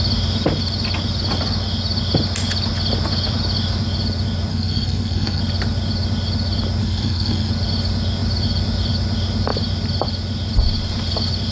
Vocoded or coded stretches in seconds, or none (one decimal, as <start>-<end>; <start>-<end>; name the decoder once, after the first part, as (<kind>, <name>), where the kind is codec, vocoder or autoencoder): 4.5-5.4 (codec, SNAC); 6.8-7.5